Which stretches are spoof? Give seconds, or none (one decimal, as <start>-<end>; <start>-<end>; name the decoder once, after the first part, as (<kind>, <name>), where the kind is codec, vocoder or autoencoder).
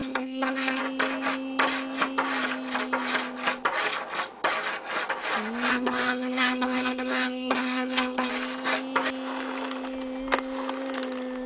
0.0-0.8 (codec, SNAC); 5.7-8.3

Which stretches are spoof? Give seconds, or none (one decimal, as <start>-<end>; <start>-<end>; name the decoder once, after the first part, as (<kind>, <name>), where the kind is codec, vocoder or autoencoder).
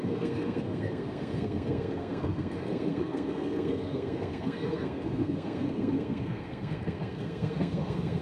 0.0-8.2 (codec, SNAC)